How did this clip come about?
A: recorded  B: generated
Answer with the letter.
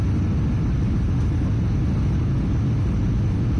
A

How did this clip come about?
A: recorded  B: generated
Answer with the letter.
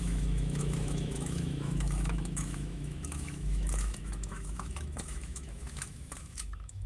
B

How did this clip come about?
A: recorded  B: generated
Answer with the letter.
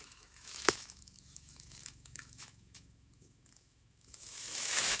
B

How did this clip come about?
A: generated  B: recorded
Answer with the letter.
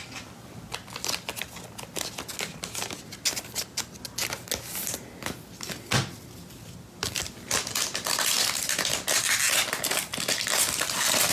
B